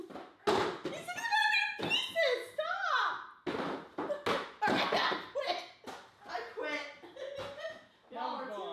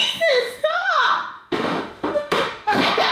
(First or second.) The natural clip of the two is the first